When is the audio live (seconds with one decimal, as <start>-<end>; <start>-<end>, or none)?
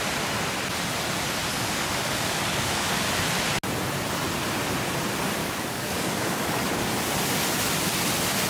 0.0-1.5; 2.9-5.4; 6.9-8.5